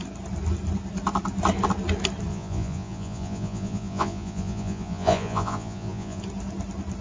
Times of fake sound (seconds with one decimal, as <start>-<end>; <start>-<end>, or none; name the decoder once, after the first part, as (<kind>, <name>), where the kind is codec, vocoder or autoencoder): 2.3-6.2 (vocoder, Vocos)

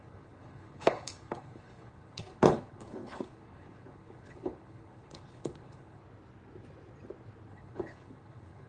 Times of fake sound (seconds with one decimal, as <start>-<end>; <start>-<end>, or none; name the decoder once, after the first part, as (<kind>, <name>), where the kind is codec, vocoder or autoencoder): 0.0-6.0 (codec, HILCodec); 7.5-8.7

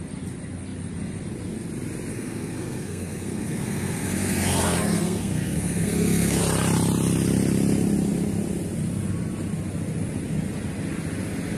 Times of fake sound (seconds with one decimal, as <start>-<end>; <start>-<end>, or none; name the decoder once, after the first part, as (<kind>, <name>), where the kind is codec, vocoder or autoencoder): 2.1-6.4 (codec, SNAC)

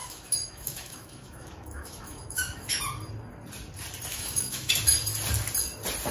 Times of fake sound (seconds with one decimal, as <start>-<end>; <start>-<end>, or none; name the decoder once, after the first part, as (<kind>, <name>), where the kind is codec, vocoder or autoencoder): 0.0-2.8 (autoencoder, DAC-VAE); 4.1-4.7

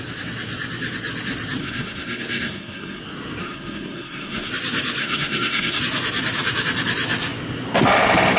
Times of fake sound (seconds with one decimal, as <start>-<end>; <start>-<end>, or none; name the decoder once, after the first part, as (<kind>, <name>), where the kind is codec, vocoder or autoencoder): 1.6-3.0 (codec, SNAC); 3.4-4.5; 5.0-5.8

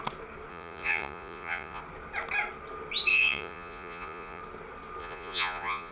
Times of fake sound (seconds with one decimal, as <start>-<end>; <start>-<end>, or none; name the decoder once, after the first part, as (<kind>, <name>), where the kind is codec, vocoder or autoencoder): 0.5-1.8 (vocoder, Vocos); 3.1-4.4; 5.0-5.9

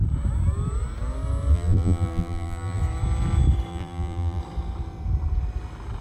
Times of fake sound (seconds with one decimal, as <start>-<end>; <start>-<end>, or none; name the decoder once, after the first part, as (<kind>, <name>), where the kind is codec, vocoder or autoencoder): 1.5-2.8 (vocoder, BigVGAN v2); 3.7-4.4

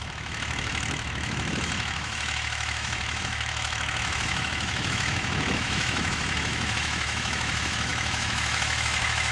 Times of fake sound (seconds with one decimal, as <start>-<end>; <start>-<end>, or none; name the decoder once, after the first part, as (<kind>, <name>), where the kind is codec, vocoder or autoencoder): 0.0-9.3 (autoencoder, DAC-VAE)